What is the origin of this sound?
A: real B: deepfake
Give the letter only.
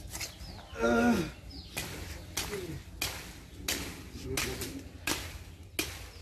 A